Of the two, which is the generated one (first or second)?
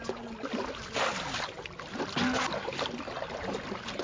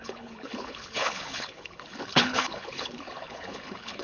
second